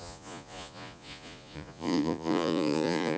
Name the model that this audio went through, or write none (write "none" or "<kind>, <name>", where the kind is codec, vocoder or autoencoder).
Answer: vocoder, Vocos